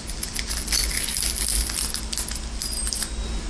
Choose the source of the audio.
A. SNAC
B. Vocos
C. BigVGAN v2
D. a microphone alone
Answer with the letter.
D